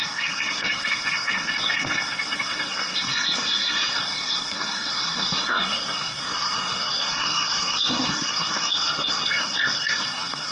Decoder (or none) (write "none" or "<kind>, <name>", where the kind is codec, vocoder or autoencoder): codec, SNAC